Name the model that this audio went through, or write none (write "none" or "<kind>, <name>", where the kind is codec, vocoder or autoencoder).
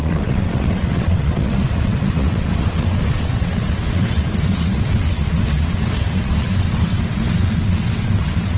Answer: vocoder, WaveNeXt